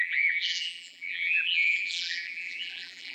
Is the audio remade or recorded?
remade